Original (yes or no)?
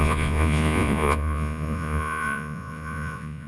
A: no